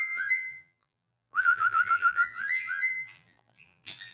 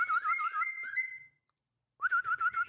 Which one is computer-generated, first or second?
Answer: first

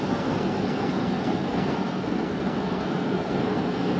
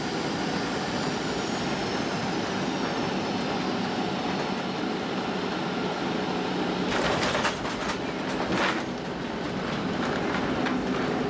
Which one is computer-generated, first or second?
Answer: first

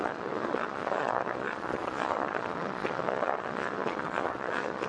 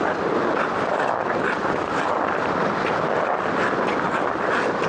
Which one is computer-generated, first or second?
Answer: first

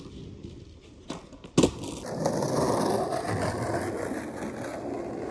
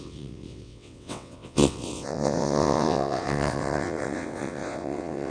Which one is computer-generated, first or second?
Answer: second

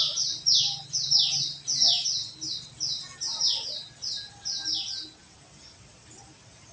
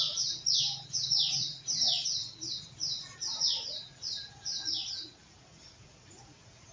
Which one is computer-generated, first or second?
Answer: second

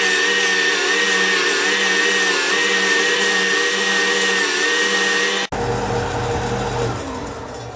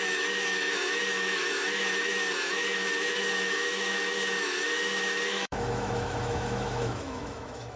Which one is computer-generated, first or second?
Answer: second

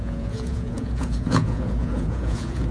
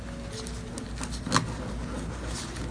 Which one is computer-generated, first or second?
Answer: first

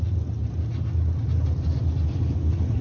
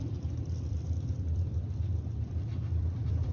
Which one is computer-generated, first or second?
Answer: second